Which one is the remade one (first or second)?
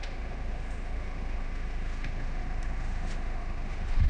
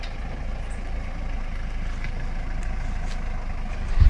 first